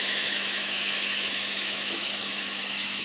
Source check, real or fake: fake